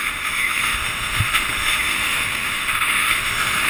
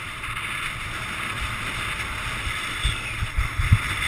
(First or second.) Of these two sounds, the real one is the second